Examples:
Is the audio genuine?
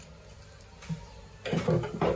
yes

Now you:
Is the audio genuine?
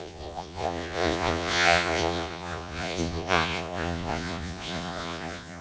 no